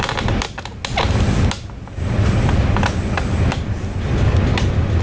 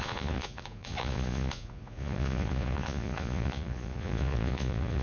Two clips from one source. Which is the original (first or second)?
first